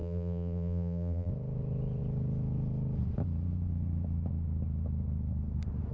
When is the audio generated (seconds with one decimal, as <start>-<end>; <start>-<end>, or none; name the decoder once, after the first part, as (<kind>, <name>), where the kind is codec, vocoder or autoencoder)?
0.0-1.3 (vocoder, BigVGAN v2)